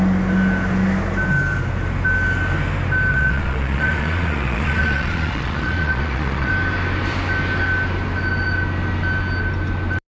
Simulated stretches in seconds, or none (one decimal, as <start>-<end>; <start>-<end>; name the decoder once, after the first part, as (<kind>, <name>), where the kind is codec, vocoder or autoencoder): 3.1-6.5 (vocoder, Vocos)